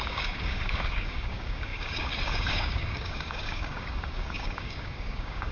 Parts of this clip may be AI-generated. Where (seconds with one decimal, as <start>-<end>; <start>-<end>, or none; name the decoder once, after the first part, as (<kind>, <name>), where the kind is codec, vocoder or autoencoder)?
0.0-5.5 (codec, DAC)